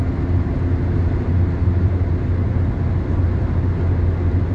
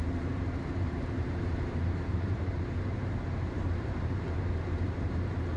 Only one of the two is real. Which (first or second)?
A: first